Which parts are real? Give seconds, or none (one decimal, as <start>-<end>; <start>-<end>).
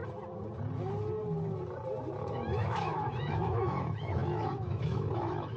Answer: 0.0-2.3